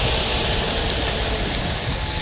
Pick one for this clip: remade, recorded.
recorded